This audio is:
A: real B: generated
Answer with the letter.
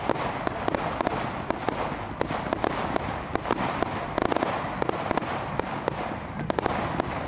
A